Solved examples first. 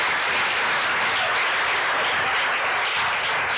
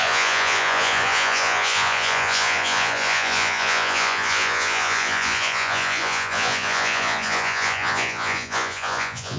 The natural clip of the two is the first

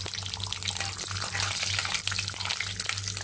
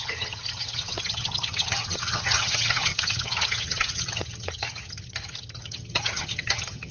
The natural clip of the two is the first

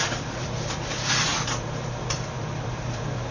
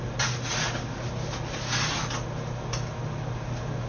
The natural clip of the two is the second